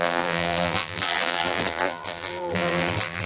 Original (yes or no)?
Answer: no